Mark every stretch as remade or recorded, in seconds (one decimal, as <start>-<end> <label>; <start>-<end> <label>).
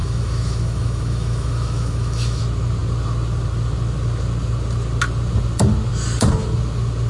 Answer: 0.0-2.4 remade; 2.4-7.1 recorded